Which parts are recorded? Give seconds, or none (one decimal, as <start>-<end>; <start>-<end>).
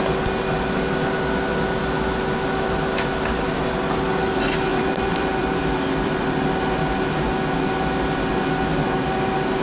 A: 0.0-4.7; 6.5-9.6